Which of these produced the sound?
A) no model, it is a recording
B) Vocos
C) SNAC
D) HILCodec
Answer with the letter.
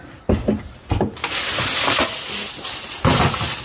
A